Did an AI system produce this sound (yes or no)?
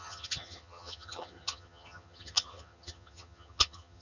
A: yes